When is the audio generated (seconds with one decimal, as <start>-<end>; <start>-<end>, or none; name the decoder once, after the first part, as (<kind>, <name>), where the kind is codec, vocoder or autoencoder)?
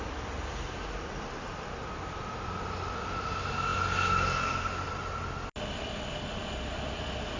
none